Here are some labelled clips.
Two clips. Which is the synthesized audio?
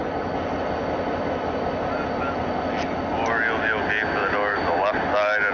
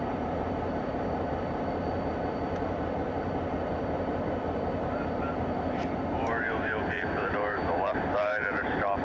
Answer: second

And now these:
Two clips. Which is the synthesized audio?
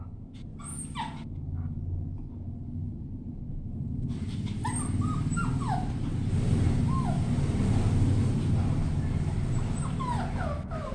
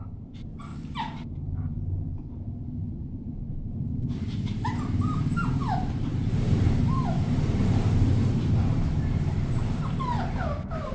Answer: second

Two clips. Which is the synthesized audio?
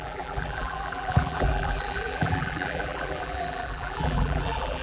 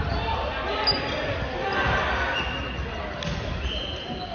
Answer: first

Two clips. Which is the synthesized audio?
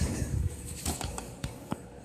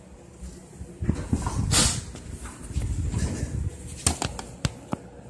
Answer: first